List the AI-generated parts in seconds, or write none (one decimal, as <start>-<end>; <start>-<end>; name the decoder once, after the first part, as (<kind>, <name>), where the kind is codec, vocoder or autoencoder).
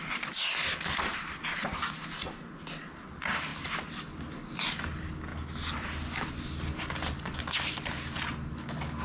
none